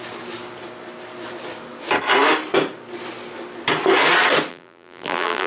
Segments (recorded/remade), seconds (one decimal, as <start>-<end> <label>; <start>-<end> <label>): 0.0-4.5 recorded; 4.5-5.5 remade